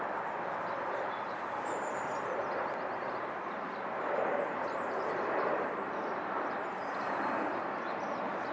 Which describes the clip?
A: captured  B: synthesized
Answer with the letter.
B